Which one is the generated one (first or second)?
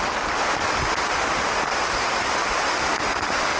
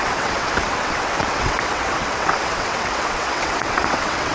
second